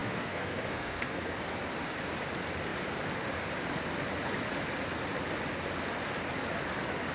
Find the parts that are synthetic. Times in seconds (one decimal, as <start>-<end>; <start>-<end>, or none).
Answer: 0.0-1.3